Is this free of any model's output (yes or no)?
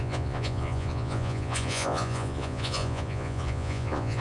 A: no